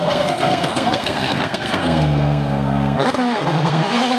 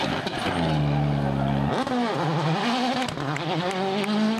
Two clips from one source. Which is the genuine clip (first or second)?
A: second